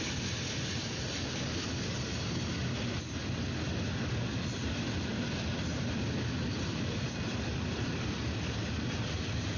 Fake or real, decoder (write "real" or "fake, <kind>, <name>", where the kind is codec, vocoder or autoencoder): real